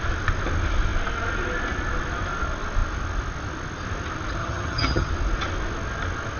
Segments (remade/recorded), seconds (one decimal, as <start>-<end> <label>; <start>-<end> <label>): 0.0-4.4 recorded; 4.4-5.1 remade; 5.1-6.4 recorded

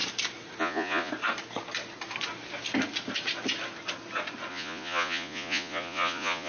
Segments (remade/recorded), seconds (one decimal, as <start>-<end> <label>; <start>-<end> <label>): 0.0-0.6 recorded; 0.6-1.1 remade; 1.1-4.5 recorded; 4.5-6.5 remade